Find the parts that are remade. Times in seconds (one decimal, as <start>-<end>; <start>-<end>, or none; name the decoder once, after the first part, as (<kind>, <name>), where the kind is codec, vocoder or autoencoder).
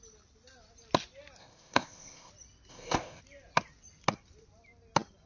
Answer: 1.4-2.3 (codec, ZipCodec); 2.7-3.2